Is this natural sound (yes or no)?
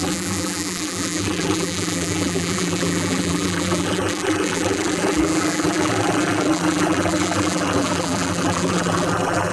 no